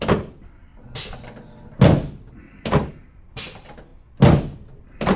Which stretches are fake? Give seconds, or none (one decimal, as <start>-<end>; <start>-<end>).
none